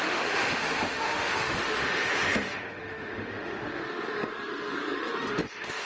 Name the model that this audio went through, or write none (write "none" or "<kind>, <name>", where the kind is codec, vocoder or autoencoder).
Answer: autoencoder, DAC-VAE